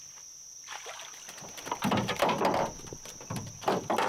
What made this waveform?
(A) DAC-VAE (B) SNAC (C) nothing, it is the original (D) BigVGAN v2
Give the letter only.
C